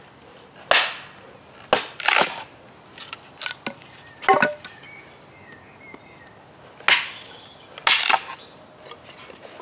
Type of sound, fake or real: real